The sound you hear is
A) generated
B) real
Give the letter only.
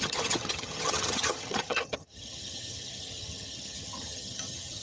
A